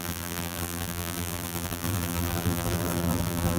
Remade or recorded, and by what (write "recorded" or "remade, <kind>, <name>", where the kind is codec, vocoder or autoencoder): remade, vocoder, BigVGAN v2